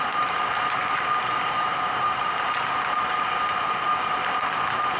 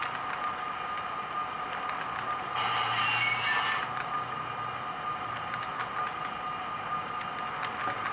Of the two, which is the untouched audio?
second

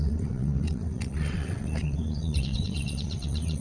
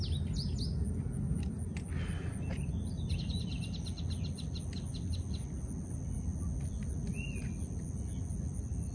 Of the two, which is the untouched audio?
second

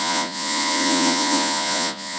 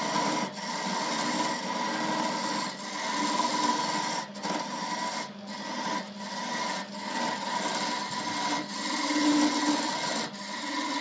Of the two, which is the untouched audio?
second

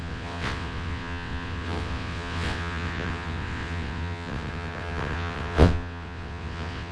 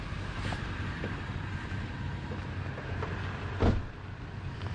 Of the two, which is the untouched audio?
second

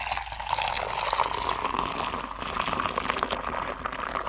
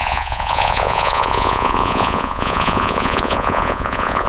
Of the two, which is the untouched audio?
first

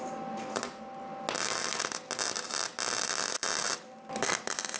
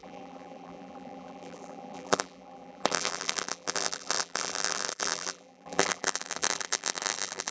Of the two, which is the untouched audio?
first